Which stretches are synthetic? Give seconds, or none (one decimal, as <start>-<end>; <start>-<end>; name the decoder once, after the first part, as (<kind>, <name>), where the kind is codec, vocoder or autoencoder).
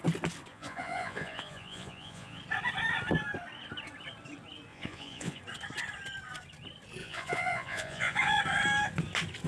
0.5-2.4 (vocoder, Vocos); 4.7-5.4; 7.0-8.4